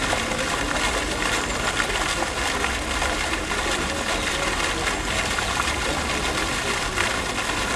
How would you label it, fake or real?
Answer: real